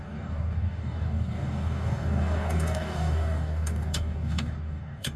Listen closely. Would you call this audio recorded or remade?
remade